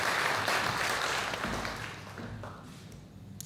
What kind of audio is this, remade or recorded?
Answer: recorded